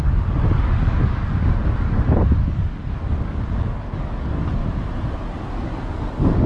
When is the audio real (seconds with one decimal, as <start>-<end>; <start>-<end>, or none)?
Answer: 4.6-5.5